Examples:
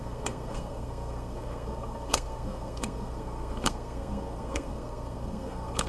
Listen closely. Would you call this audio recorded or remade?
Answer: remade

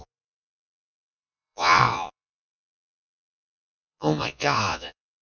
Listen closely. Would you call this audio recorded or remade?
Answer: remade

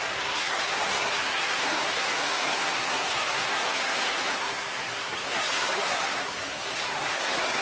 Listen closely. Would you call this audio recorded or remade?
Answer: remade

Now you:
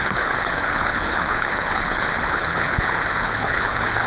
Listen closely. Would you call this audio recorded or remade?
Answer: remade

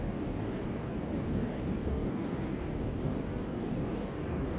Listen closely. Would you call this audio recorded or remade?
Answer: remade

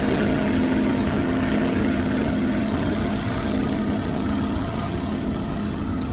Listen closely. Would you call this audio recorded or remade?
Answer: remade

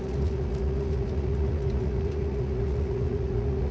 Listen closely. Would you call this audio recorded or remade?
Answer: remade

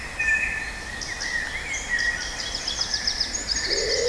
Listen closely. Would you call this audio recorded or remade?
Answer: recorded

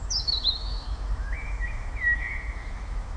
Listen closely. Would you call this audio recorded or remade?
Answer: remade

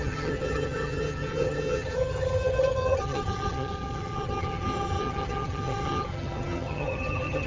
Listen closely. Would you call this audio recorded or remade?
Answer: remade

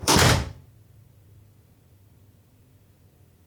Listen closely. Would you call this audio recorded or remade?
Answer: remade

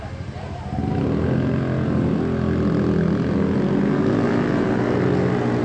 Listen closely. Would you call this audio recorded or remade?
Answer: recorded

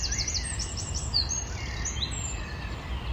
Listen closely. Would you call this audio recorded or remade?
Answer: recorded